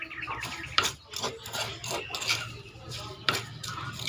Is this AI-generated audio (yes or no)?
yes